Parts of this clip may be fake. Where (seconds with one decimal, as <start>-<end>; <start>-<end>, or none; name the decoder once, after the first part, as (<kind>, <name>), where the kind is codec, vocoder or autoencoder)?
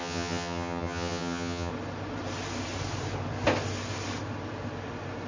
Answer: 0.0-1.7 (vocoder, HiFi-GAN)